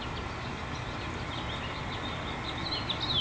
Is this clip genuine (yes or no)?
yes